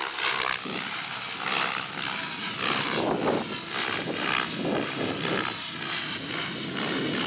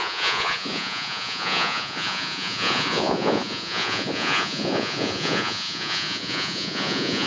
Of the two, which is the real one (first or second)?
first